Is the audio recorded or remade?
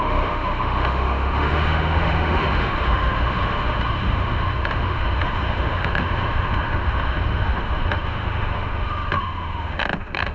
remade